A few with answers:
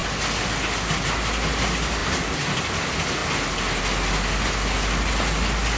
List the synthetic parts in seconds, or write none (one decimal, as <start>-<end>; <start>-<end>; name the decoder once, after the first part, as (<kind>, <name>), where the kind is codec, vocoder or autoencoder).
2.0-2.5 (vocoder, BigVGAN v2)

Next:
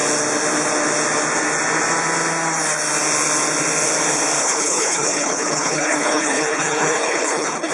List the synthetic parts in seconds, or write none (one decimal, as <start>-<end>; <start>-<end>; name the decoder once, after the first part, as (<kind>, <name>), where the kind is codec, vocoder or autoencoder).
4.4-7.7 (codec, HILCodec)

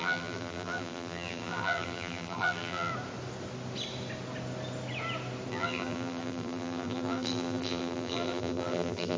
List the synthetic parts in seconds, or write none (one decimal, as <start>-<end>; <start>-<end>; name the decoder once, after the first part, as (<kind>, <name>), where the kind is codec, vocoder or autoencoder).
0.0-2.9 (vocoder, BigVGAN v2); 5.5-9.2